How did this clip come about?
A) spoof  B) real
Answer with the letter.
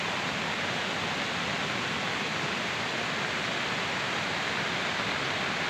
B